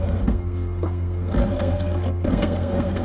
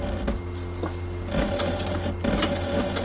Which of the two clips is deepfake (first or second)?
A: first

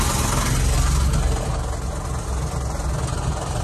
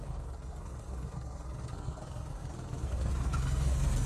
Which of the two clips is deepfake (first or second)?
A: second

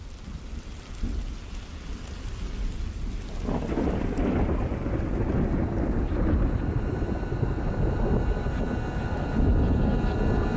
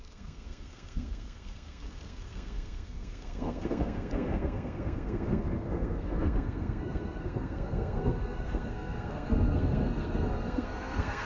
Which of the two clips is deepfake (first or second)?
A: second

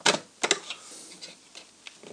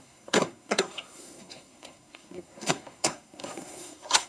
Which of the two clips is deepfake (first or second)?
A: second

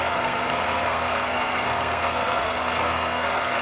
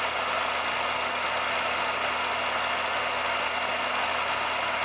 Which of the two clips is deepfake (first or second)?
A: first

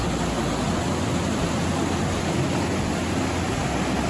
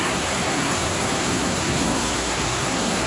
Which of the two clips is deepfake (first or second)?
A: second